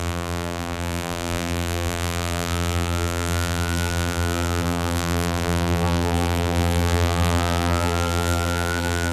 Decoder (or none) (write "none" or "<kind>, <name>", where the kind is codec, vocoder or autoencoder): vocoder, BigVGAN v2